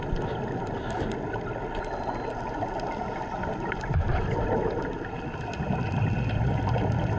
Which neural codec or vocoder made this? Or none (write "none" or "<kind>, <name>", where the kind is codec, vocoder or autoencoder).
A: none